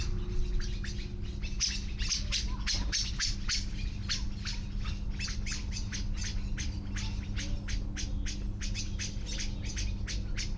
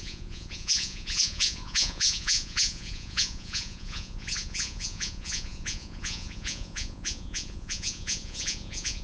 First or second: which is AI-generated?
second